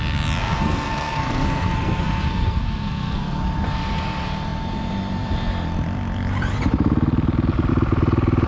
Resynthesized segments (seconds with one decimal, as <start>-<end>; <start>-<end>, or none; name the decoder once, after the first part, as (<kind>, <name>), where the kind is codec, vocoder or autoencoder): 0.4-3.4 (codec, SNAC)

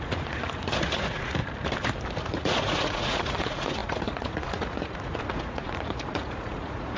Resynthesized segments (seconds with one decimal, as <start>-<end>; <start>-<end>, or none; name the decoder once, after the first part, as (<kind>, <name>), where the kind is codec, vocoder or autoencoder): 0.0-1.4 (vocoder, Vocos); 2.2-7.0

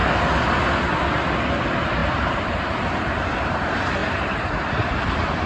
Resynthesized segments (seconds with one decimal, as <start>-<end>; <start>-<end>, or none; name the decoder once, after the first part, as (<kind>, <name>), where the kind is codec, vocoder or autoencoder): 2.0-3.6 (vocoder, BigVGAN v2); 4.0-4.5